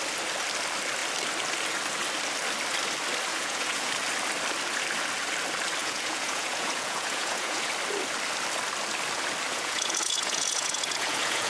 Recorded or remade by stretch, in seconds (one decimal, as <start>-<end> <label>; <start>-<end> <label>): 0.0-3.3 recorded; 3.3-3.9 remade; 3.9-5.8 recorded; 5.8-7.7 remade; 7.7-9.5 recorded; 9.5-11.5 remade